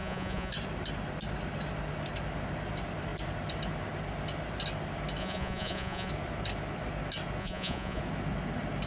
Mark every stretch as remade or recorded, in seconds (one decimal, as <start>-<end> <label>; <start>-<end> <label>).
0.0-0.5 remade; 0.5-5.2 recorded; 5.2-6.1 remade; 6.1-7.4 recorded; 7.4-8.0 remade; 8.0-8.9 recorded

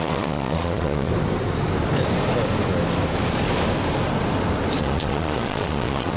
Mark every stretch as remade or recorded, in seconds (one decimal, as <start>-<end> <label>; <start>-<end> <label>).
0.0-1.1 remade; 1.1-4.8 recorded; 4.8-6.2 remade

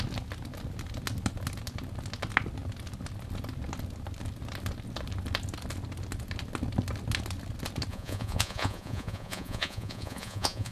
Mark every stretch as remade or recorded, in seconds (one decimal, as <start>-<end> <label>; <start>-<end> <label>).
0.0-7.9 recorded; 7.9-10.7 remade

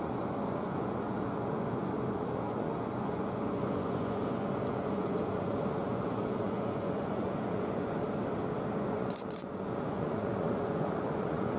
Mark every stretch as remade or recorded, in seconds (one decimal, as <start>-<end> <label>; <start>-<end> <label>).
0.0-8.0 remade; 8.0-8.8 recorded; 8.8-11.6 remade

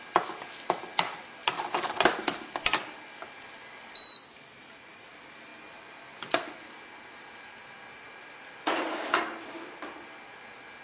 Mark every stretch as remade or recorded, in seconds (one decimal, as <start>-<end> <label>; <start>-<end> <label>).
0.0-4.6 recorded; 4.6-5.1 remade; 5.1-8.2 recorded; 8.2-8.9 remade; 8.9-10.8 recorded

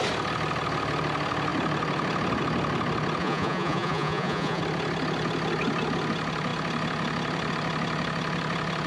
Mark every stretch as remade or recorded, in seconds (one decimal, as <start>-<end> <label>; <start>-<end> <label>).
0.0-3.2 recorded; 3.2-4.6 remade; 4.6-8.9 recorded